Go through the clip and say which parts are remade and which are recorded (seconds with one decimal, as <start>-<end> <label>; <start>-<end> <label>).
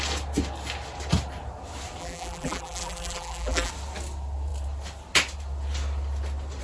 0.0-2.0 recorded; 2.0-3.7 remade; 3.7-6.6 recorded